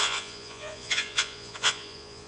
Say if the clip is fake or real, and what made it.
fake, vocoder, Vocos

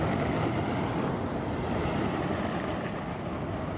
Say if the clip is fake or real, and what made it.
real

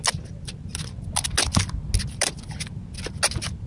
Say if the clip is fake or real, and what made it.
real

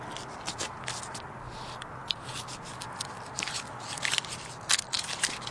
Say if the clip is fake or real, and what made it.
real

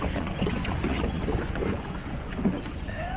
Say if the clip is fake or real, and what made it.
fake, vocoder, Vocos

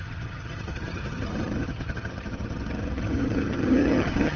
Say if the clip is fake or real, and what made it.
fake, vocoder, HiFi-GAN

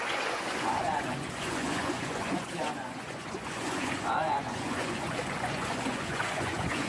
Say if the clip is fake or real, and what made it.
fake, vocoder, Vocos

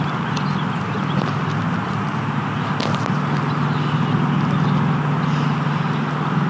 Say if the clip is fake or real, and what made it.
real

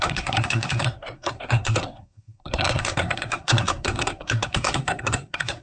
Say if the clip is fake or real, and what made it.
fake, codec, SNAC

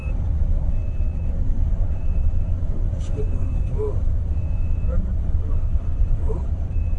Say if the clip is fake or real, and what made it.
fake, vocoder, BigVGAN v2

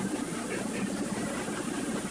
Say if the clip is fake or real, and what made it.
real